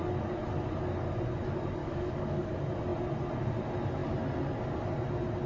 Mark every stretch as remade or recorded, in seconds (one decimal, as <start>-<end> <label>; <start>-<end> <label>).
0.0-1.8 recorded; 1.8-2.5 remade; 2.5-5.5 recorded